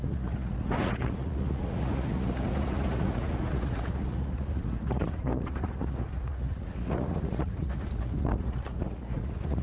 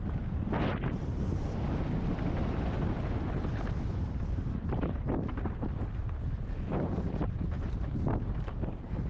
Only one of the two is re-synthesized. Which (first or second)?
first